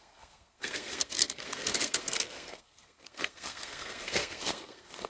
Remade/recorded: remade